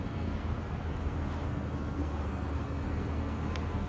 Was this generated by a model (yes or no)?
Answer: yes